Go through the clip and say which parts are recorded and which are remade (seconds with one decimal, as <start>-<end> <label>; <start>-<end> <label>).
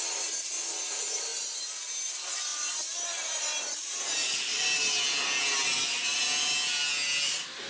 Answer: 0.0-7.7 recorded